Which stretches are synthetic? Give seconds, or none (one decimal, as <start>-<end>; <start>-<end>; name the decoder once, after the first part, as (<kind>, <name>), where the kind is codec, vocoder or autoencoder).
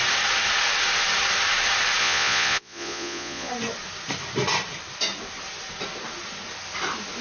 2.0-3.5 (vocoder, Vocos)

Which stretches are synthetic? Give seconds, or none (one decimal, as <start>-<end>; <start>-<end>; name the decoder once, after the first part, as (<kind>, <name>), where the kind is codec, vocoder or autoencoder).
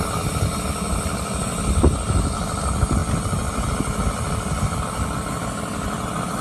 none